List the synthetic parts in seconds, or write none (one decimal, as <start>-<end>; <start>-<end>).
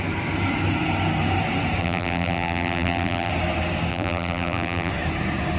1.8-3.3; 3.9-4.9